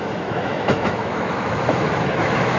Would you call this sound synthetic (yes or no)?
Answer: yes